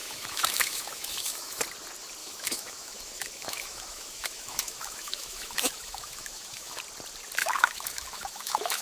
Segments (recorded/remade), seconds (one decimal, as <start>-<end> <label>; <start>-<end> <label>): 0.0-1.6 remade; 1.6-2.2 recorded; 2.2-6.8 remade; 6.8-7.4 recorded; 7.4-8.8 remade